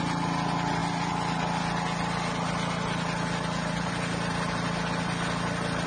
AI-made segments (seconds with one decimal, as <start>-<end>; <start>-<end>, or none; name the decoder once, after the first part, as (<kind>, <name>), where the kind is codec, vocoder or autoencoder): none